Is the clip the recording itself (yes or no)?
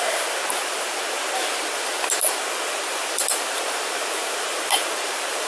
no